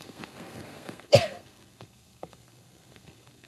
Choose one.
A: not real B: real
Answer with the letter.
A